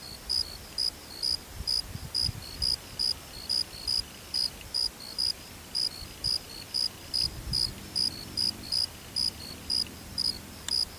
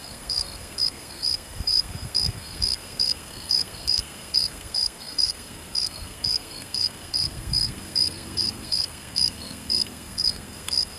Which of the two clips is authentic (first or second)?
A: first